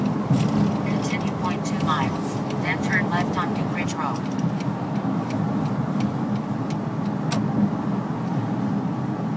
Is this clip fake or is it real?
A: real